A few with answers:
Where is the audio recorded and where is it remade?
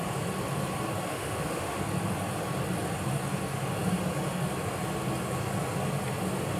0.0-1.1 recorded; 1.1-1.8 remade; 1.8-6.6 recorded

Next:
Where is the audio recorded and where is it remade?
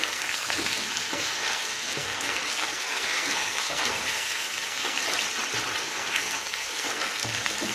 0.0-5.0 remade; 5.0-5.8 recorded; 5.8-7.7 remade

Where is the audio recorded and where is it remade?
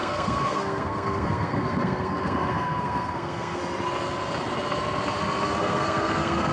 0.0-3.6 remade; 3.6-5.6 recorded; 5.6-6.5 remade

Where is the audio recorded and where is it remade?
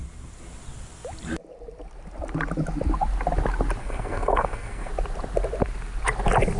0.0-3.8 recorded; 3.8-4.9 remade; 4.9-6.6 recorded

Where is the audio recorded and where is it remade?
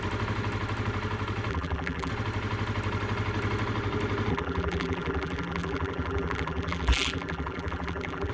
0.0-1.5 recorded; 1.5-2.1 remade; 2.1-4.3 recorded; 4.3-8.3 remade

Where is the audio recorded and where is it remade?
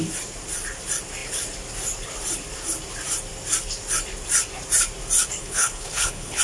0.0-5.4 recorded; 5.4-6.4 remade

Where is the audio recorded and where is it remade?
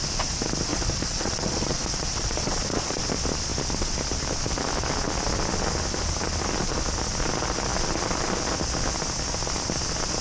0.0-0.7 recorded; 0.7-3.0 remade; 3.0-10.2 recorded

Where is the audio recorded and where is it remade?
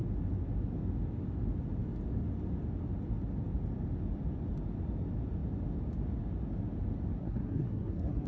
0.0-7.2 recorded; 7.2-8.3 remade